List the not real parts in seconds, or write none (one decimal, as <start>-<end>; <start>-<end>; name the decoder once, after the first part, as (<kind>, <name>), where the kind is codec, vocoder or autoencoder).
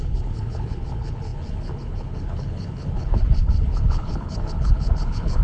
0.0-5.4 (codec, HILCodec)